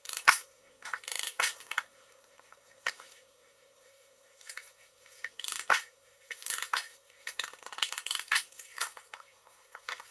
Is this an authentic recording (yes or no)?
no